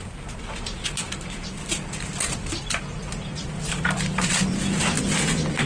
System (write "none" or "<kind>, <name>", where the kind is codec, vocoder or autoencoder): none